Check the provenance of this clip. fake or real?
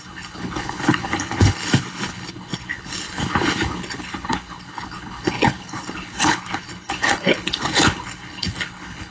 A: fake